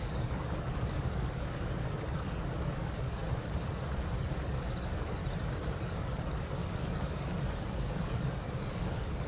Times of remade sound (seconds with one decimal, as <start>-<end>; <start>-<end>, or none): 0.0-3.2; 4.2-5.2; 5.8-9.3